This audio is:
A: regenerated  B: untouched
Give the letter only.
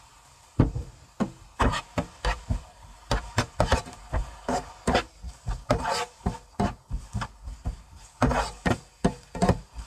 B